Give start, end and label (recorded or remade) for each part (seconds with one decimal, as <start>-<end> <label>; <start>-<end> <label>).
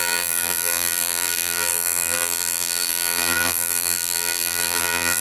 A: 0.0-5.2 remade